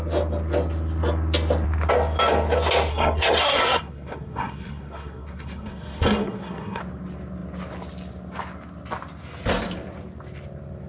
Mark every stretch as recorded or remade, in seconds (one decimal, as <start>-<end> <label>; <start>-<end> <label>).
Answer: 0.0-2.9 recorded; 2.9-6.8 remade; 6.8-10.9 recorded